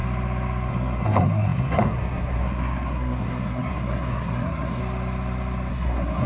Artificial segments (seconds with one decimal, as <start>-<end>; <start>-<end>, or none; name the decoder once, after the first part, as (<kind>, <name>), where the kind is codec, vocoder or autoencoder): 0.7-4.8 (codec, SNAC); 5.7-6.3